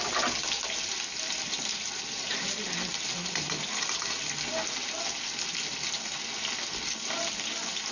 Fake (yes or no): no